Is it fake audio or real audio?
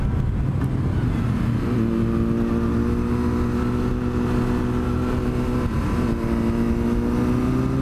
real